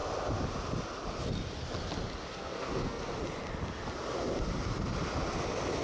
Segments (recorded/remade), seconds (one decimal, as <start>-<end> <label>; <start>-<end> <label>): 0.0-2.3 recorded; 2.3-3.0 remade; 3.0-5.8 recorded